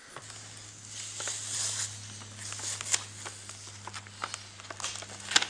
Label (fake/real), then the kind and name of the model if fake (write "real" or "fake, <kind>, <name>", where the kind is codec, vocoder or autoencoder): real